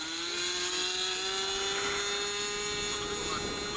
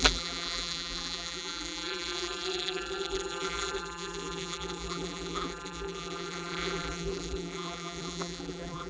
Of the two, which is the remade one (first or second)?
second